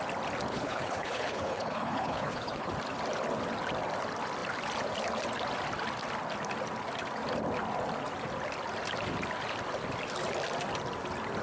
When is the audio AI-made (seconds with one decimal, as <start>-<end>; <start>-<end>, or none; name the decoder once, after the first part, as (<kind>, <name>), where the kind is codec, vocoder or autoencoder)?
0.5-2.7 (codec, HILCodec)